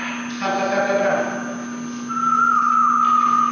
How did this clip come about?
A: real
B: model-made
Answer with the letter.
A